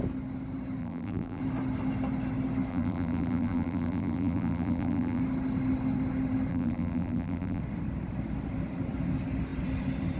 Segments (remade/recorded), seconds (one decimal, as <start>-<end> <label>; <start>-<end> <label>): 0.0-0.8 recorded; 0.8-1.4 remade; 1.4-2.7 recorded; 2.7-5.2 remade; 5.2-6.5 recorded; 6.5-7.6 remade; 7.6-10.2 recorded